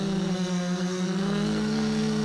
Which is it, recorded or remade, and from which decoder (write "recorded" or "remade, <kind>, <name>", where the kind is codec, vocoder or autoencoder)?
remade, codec, SNAC